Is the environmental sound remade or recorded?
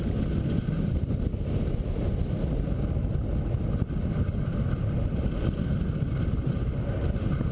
recorded